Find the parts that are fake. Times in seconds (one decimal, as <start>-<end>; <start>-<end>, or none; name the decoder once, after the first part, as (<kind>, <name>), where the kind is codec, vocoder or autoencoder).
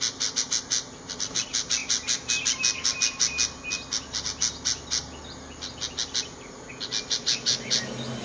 none